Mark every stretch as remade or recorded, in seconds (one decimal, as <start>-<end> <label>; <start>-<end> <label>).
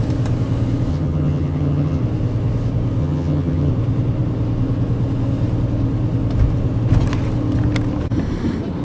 0.0-0.9 recorded; 0.9-2.0 remade; 2.0-3.0 recorded; 3.0-3.7 remade; 3.7-8.8 recorded